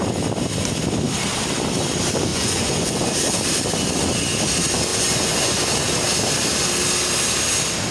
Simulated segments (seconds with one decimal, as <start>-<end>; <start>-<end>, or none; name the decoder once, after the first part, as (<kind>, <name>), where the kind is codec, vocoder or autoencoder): 2.3-3.1 (vocoder, Vocos); 4.9-5.7